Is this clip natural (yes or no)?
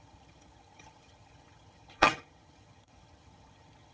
no